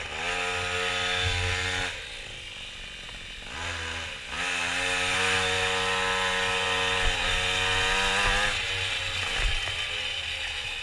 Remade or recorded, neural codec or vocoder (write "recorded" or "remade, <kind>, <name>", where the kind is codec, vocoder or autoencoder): recorded